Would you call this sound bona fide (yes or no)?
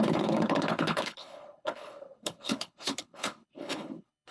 no